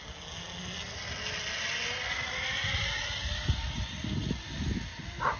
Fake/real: real